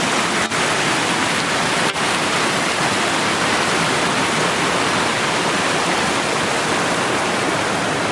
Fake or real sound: real